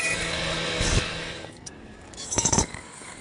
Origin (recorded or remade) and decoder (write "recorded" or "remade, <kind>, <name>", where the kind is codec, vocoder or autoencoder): remade, codec, DAC